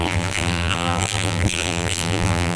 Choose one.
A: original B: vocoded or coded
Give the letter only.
B